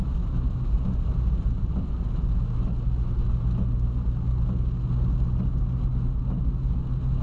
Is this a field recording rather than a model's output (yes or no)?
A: yes